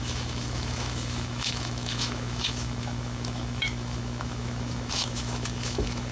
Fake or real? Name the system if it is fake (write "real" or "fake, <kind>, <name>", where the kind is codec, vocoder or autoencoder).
fake, autoencoder, DAC-VAE